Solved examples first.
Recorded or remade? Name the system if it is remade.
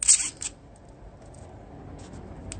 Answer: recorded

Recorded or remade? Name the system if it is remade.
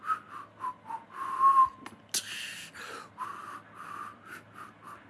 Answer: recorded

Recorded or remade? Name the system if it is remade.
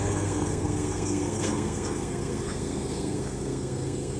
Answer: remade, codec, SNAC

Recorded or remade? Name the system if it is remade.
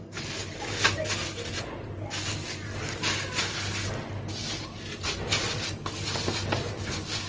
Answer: recorded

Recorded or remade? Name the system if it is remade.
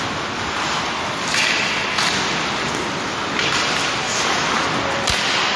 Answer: recorded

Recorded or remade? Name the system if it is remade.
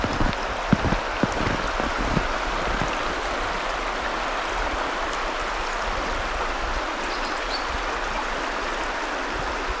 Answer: recorded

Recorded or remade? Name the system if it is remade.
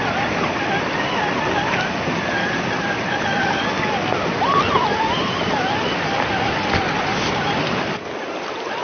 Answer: recorded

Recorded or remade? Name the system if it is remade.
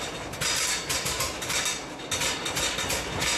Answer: recorded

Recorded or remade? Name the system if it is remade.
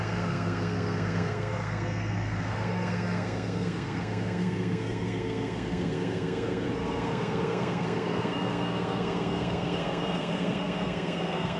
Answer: remade, codec, SNAC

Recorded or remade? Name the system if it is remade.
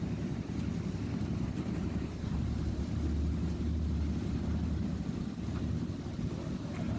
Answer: recorded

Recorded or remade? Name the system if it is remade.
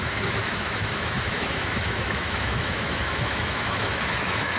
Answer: remade, autoencoder, DAC-VAE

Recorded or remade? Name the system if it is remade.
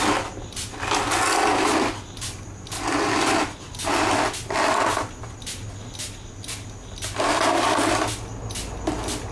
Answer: recorded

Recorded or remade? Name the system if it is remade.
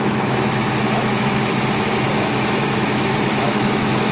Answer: remade, autoencoder, DAC-VAE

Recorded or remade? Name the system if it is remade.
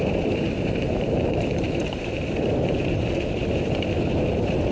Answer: remade, vocoder, BigVGAN v2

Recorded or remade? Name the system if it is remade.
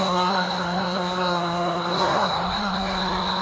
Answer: remade, codec, SNAC